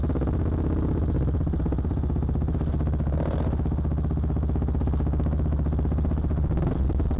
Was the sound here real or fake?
real